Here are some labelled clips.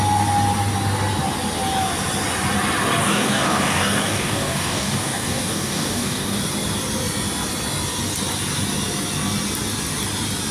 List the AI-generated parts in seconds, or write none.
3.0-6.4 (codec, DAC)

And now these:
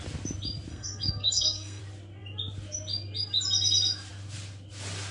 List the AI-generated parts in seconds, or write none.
0.7-1.8 (codec, SNAC)

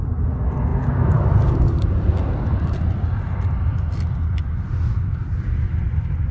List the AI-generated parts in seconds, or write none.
none

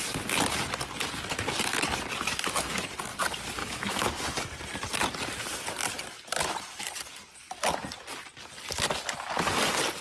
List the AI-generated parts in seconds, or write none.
3.6-4.2 (autoencoder, DAC-VAE)

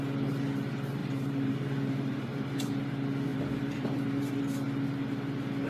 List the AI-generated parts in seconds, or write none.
1.0-2.7 (vocoder, BigVGAN v2); 3.3-4.4

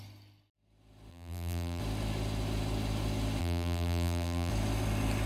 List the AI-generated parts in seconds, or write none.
1.1-1.8 (vocoder, BigVGAN v2); 3.4-4.5

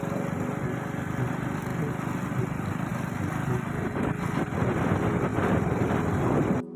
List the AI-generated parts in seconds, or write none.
5.3-6.0 (vocoder, BigVGAN v2)